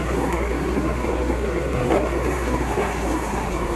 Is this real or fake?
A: fake